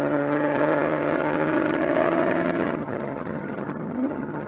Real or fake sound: fake